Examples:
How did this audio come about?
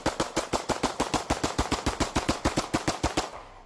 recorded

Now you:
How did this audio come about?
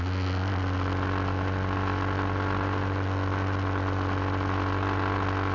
recorded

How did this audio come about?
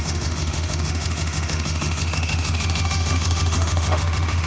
remade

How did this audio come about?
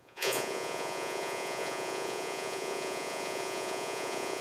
remade